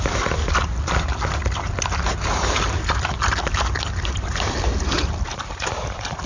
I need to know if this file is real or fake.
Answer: real